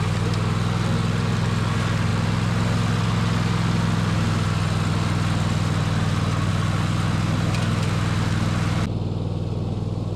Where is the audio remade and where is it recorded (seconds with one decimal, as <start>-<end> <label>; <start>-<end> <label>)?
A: 0.0-10.2 recorded